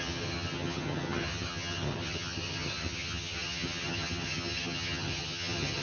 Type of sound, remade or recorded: remade